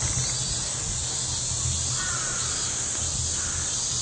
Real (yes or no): yes